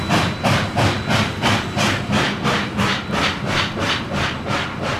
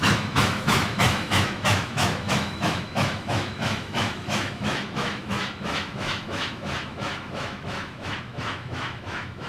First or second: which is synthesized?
second